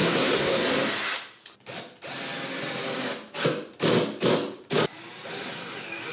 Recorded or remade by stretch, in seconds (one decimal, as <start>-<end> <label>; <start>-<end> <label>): 0.0-0.7 remade; 0.7-6.1 recorded

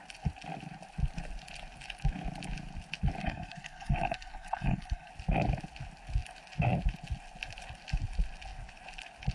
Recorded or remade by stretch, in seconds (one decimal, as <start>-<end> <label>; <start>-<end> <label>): 0.0-3.2 recorded; 3.2-5.1 remade; 5.1-9.3 recorded

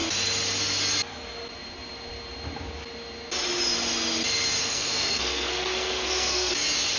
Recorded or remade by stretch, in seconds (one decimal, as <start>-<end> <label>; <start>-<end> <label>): 0.0-4.6 recorded; 4.6-6.5 remade; 6.5-7.0 recorded